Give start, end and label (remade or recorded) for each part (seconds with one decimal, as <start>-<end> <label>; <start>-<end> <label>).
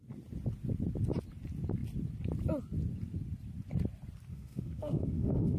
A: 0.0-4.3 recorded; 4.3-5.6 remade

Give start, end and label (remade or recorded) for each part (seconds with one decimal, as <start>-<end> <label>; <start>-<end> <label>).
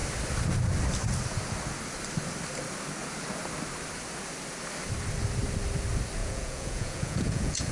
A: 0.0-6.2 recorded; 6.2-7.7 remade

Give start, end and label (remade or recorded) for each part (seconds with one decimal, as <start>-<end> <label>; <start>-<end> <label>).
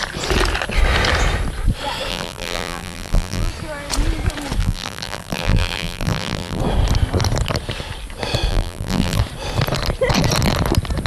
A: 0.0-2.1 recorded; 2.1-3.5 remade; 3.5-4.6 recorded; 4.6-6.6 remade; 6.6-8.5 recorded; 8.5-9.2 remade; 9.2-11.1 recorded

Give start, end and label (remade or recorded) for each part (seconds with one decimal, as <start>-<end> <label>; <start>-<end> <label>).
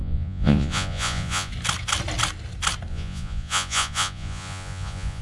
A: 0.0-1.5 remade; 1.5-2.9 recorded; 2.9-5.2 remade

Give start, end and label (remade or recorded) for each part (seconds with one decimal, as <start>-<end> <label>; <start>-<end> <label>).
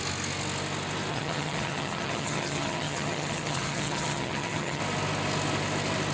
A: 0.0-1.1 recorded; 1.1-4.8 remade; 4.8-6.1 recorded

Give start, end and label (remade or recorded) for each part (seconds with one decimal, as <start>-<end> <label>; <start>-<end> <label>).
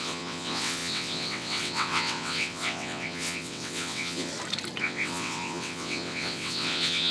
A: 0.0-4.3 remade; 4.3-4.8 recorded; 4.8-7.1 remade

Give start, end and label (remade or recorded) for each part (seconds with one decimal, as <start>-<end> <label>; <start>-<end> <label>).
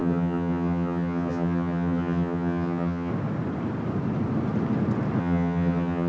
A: 0.0-3.1 remade; 3.1-5.2 recorded; 5.2-6.1 remade